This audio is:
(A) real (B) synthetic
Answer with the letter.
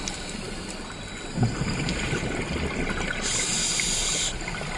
A